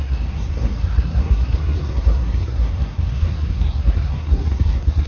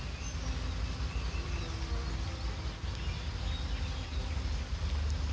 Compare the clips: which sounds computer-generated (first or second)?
first